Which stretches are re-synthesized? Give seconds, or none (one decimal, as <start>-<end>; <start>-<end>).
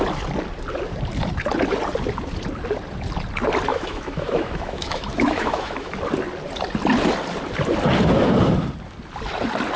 3.7-5.9